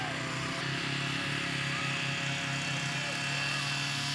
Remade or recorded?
recorded